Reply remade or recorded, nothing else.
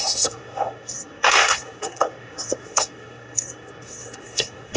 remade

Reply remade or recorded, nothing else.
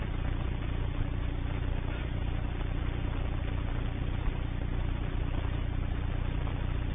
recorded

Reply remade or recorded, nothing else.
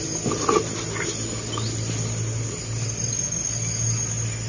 recorded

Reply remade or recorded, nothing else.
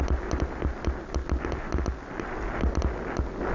recorded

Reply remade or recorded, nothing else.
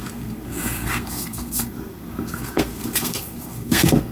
remade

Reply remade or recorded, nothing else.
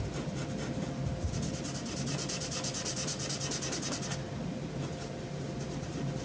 recorded